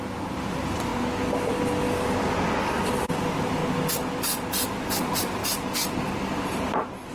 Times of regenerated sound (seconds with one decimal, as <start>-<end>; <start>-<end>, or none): 0.0-0.9; 2.6-3.6; 4.7-5.4